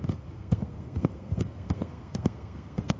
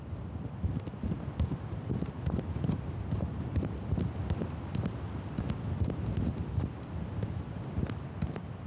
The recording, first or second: second